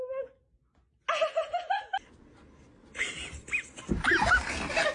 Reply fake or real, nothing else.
real